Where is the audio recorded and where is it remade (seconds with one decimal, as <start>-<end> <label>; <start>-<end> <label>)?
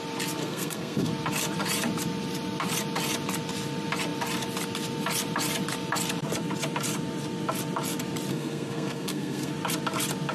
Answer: 0.0-0.4 recorded; 0.4-1.1 remade; 1.1-8.3 recorded; 8.3-9.5 remade; 9.5-10.3 recorded